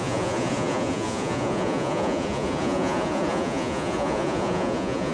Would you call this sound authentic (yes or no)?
no